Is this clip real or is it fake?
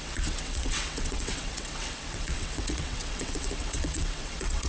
fake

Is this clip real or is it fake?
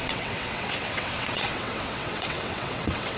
fake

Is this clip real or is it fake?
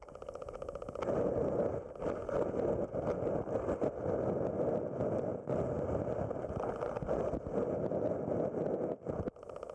real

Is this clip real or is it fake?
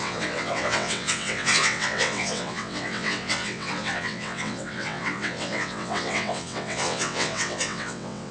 fake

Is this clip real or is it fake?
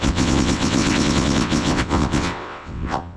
fake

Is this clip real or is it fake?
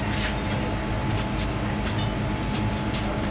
real